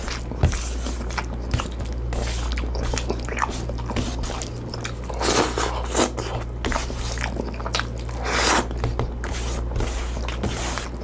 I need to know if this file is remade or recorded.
recorded